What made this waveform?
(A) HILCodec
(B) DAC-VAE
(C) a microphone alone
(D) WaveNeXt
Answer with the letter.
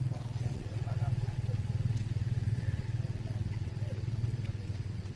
D